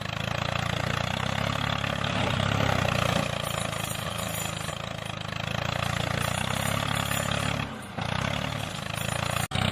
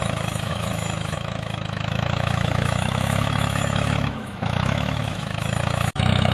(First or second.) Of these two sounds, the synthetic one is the second